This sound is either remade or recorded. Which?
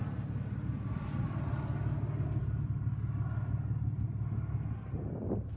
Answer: recorded